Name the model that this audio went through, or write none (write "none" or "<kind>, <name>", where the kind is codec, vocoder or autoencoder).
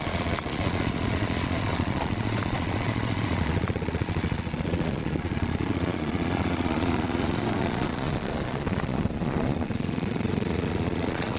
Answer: vocoder, Vocos